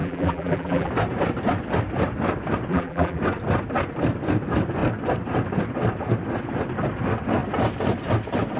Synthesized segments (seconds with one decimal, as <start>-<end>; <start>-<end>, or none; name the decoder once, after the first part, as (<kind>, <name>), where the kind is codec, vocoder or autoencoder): 0.0-0.9 (vocoder, BigVGAN v2); 2.7-3.2